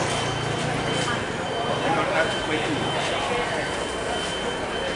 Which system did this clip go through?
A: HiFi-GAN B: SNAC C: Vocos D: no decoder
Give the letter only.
D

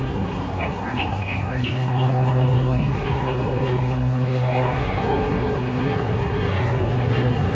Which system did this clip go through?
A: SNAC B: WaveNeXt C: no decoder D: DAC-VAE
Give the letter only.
A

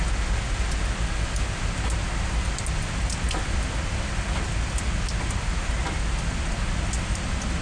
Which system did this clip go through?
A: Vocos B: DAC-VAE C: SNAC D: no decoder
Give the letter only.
D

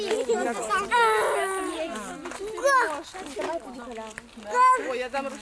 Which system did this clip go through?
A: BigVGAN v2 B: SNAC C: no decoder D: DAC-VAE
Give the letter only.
C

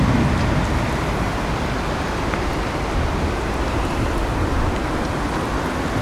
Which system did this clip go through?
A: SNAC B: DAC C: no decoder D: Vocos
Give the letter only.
C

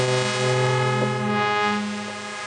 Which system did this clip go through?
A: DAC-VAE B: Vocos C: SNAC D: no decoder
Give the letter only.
D